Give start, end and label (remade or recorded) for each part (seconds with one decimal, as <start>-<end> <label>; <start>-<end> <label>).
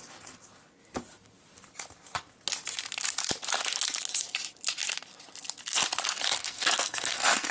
0.0-6.4 recorded; 6.4-7.5 remade